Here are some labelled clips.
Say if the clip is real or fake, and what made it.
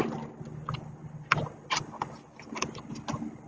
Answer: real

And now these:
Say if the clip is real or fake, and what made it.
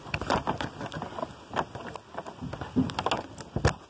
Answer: real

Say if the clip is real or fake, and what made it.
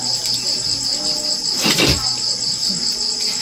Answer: real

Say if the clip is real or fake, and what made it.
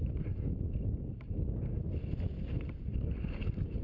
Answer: fake, vocoder, BigVGAN v2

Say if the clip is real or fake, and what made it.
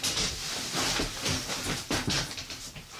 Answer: fake, vocoder, BigVGAN v2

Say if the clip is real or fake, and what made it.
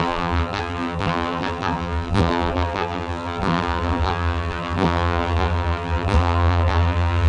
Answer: fake, vocoder, BigVGAN v2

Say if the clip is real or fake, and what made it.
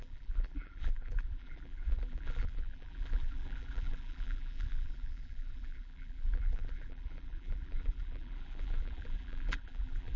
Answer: fake, vocoder, BigVGAN v2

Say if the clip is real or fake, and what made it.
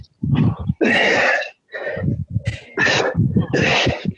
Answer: real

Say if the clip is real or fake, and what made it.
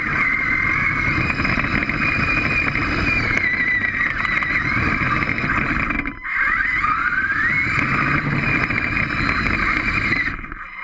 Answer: real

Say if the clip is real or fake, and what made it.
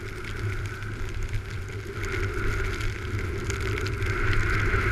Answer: real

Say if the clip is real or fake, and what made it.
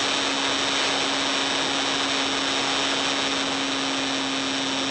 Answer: real